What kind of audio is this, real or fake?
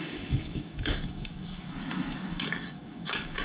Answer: fake